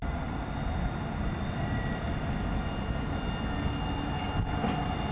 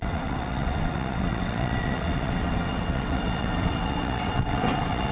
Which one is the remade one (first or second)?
second